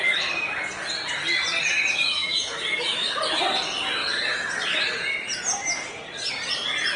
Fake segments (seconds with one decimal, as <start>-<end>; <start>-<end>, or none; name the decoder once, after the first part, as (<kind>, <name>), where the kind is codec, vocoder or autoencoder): 2.1-3.2 (autoencoder, DAC-VAE)